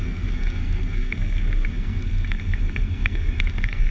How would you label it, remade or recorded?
remade